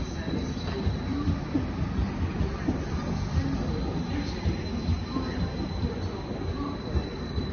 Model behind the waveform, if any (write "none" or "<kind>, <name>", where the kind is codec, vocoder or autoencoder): none